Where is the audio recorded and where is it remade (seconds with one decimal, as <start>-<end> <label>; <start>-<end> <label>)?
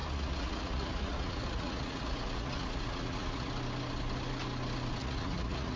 0.0-3.5 remade; 3.5-5.0 recorded; 5.0-5.8 remade